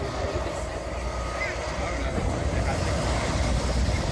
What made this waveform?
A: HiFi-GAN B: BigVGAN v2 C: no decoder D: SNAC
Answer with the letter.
C